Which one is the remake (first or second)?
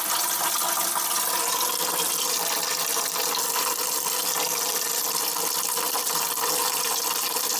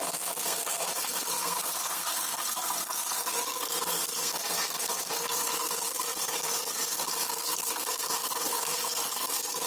second